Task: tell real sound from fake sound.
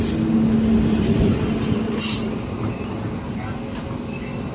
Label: real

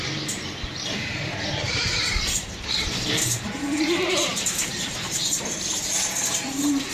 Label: fake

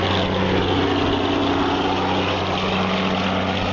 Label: real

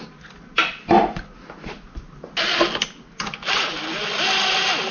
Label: real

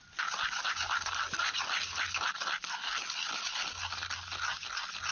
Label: real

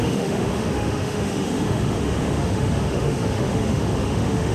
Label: fake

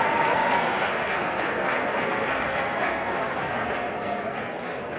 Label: fake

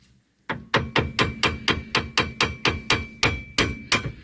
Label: real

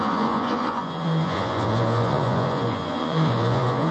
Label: fake